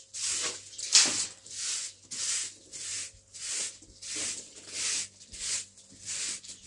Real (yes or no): yes